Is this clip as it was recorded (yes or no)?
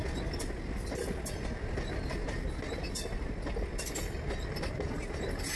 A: yes